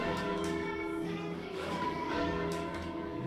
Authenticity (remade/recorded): remade